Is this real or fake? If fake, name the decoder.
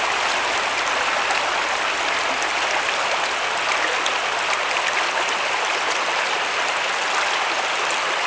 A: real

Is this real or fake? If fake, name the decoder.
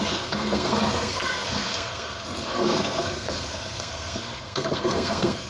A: fake, codec, SNAC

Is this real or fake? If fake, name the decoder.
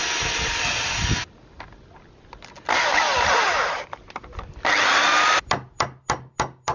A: real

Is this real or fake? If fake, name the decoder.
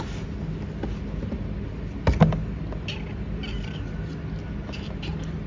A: real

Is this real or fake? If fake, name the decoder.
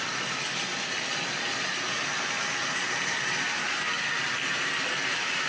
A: real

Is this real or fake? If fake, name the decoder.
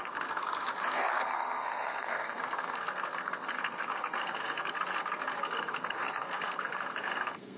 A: fake, codec, SNAC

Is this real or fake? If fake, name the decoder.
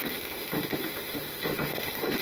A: fake, autoencoder, DAC-VAE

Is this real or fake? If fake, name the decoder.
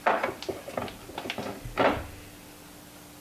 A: real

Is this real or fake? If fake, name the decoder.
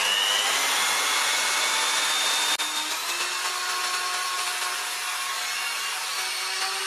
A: real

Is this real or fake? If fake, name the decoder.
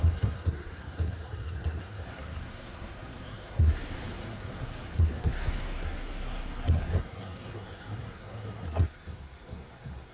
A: fake, codec, SNAC